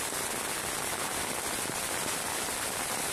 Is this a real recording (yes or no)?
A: no